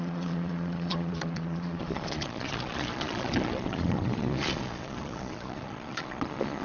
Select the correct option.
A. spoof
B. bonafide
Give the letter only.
A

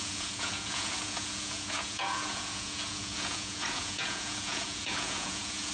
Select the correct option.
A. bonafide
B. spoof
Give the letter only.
B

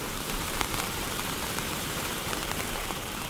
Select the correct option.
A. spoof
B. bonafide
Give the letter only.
A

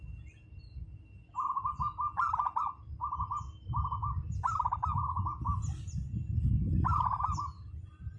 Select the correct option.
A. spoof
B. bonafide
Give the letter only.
B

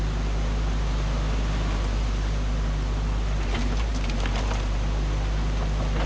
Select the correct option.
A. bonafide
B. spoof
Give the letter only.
A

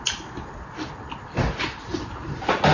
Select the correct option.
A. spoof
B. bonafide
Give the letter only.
B